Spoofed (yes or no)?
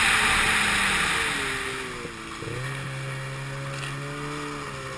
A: no